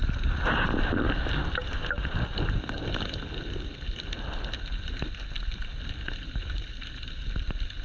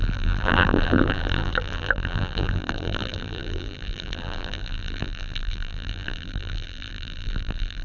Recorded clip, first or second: first